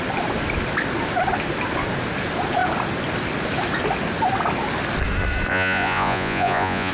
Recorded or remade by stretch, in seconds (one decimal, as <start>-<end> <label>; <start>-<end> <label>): 0.0-5.5 recorded; 5.5-6.9 remade